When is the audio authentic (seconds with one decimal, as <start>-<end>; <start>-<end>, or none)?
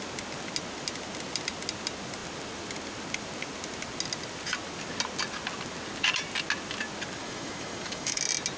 0.0-7.2; 8.2-8.6